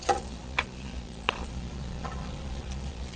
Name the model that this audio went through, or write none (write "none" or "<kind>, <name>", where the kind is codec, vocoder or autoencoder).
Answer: vocoder, Vocos